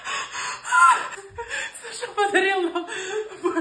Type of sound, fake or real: real